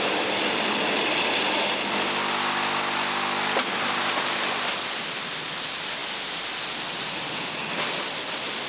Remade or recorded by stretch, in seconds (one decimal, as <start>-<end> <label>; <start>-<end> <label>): 0.0-8.7 recorded